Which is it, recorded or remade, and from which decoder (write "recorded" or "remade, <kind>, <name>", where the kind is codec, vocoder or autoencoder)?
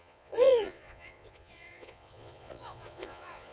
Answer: remade, vocoder, Vocos